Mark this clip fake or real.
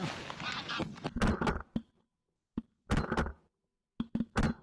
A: real